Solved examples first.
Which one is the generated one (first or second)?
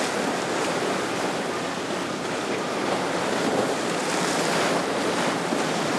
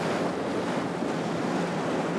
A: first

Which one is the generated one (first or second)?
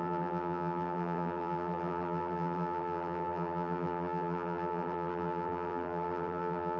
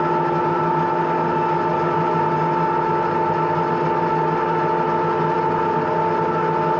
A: first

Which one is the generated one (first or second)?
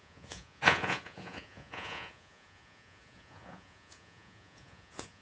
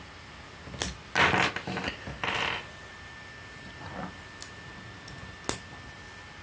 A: first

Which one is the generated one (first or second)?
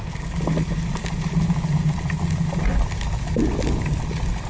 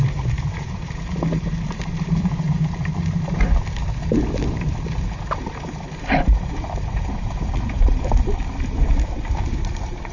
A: second